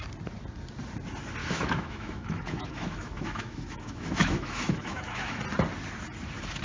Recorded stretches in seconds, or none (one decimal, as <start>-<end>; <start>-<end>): 0.0-1.4; 5.4-6.6